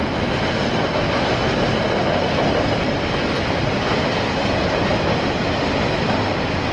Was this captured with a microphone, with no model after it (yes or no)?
yes